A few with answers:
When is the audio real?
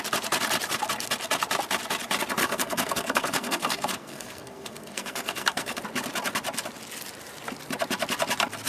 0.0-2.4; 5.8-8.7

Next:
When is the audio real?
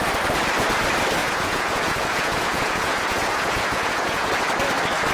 0.0-1.2; 4.3-5.1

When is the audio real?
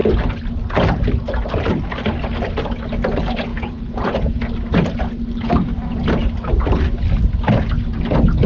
0.0-3.5; 4.4-8.5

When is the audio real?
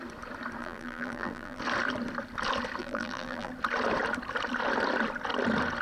0.0-0.6; 1.6-2.8; 3.5-5.8